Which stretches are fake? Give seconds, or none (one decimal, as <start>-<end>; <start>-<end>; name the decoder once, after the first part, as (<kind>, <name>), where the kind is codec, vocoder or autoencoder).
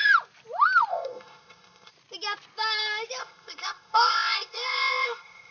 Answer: 0.9-1.9 (codec, ZipCodec); 3.2-5.5